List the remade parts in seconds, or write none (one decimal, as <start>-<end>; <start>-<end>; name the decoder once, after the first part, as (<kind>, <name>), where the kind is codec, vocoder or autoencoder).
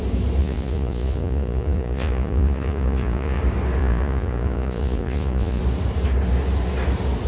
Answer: 0.4-3.4 (vocoder, Vocos); 3.8-5.6